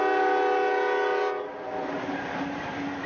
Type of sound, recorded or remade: recorded